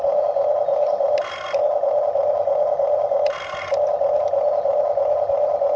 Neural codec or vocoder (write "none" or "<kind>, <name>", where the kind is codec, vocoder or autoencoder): none